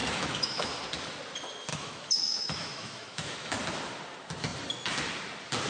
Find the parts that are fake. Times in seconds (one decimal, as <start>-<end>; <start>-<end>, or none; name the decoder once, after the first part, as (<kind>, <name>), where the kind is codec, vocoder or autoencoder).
0.0-0.7 (autoencoder, DAC-VAE); 1.7-3.6